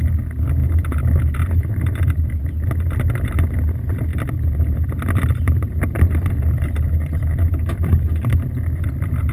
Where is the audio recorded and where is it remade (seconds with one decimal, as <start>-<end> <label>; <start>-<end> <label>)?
0.0-0.6 recorded; 0.6-2.5 remade; 2.5-9.3 recorded